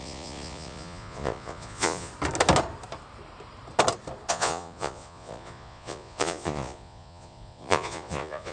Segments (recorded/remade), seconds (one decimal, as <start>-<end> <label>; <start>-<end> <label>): 0.0-2.1 remade; 2.1-4.3 recorded; 4.3-8.5 remade